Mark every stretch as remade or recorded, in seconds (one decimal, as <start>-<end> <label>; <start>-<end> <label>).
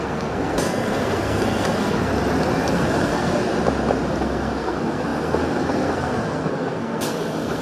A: 0.0-2.1 remade; 2.1-2.7 recorded; 2.7-3.5 remade; 3.5-4.2 recorded; 4.2-7.6 remade